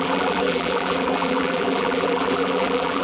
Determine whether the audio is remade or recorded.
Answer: remade